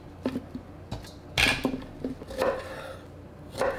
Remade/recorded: recorded